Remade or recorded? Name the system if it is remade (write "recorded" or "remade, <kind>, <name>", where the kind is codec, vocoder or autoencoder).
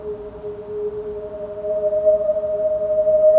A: recorded